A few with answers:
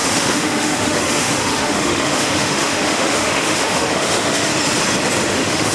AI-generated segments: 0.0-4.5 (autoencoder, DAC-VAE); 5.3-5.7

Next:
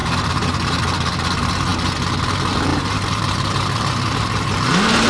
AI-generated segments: 0.0-0.8 (vocoder, BigVGAN v2); 2.7-5.1